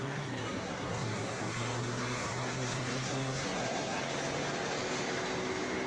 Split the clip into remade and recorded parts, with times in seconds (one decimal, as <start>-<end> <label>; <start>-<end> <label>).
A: 0.0-4.0 remade; 4.0-5.9 recorded